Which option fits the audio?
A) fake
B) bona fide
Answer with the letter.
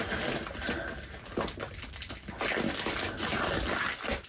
B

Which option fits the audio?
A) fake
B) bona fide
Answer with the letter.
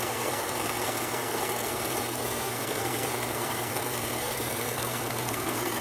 A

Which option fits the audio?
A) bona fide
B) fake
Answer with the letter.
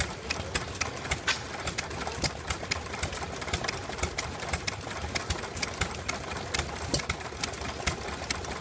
A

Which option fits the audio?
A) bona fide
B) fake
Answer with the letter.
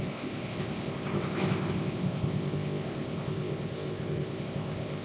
B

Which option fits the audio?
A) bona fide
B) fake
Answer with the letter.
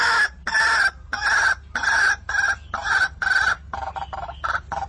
A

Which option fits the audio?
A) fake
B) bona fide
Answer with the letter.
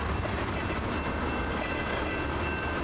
B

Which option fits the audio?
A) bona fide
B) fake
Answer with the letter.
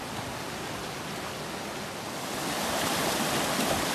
A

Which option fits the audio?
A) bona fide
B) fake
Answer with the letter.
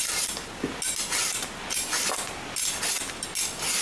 A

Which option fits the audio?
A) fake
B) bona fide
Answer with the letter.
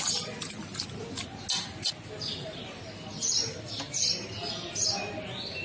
B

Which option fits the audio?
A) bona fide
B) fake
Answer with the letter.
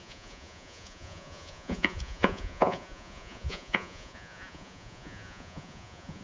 B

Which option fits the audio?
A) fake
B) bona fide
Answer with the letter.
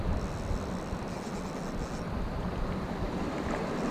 B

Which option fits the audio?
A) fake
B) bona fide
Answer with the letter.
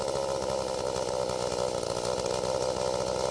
B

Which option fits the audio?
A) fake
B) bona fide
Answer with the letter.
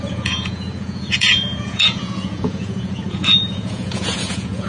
A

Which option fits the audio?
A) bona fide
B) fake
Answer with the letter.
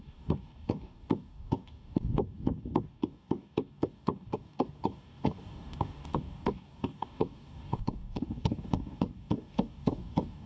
B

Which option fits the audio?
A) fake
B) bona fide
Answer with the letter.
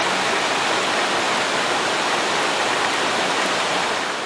B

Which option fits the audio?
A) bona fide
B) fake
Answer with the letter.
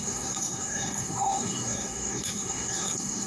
B